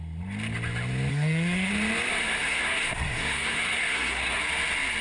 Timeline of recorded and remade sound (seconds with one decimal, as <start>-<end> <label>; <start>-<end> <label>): 0.0-1.1 recorded; 1.1-1.7 remade; 1.7-2.1 recorded; 2.1-4.4 remade; 4.4-5.0 recorded